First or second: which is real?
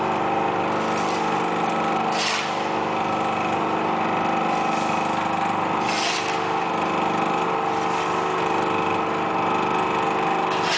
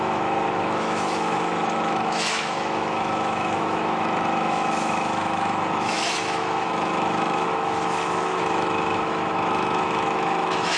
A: first